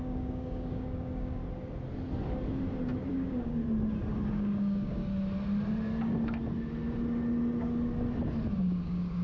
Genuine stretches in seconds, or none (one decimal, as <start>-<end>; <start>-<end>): 1.4-3.1; 3.6-4.3; 5.0-8.6